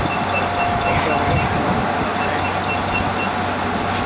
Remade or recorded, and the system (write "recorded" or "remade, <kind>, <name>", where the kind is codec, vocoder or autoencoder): recorded